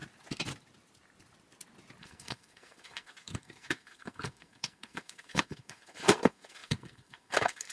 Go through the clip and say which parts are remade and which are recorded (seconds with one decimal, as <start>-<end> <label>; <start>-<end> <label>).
0.0-2.0 recorded; 2.0-7.7 remade